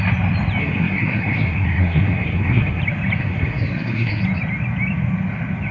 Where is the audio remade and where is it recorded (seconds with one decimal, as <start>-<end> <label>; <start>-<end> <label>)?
0.0-0.6 recorded; 0.6-2.8 remade; 2.8-3.2 recorded; 3.2-4.2 remade; 4.2-5.7 recorded